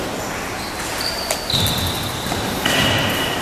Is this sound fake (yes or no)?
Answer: no